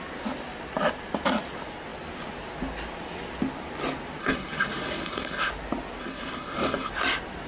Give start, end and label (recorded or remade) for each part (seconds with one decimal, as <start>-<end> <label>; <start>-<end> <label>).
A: 0.0-4.2 recorded; 4.2-5.5 remade; 5.5-6.0 recorded; 6.0-6.9 remade; 6.9-7.5 recorded